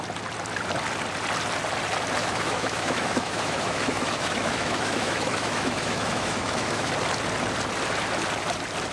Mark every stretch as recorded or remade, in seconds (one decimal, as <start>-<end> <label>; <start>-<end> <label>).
0.0-2.2 recorded; 2.2-6.9 remade; 6.9-8.9 recorded